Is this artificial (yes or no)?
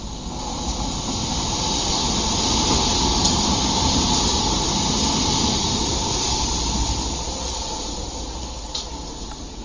no